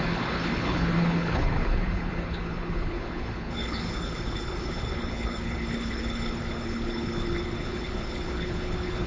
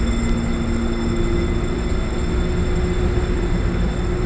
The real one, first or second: second